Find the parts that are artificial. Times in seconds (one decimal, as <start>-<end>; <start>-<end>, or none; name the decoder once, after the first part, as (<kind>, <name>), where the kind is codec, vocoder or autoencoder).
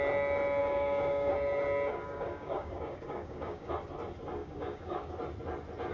0.6-1.3 (codec, DAC); 1.9-3.7; 4.4-5.1